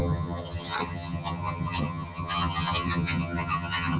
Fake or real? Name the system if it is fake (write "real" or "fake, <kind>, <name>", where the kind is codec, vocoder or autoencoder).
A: fake, vocoder, HiFi-GAN